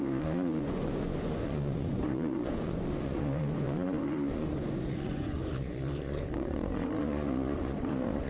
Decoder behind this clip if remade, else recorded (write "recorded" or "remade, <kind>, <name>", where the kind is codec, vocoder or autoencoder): remade, vocoder, Vocos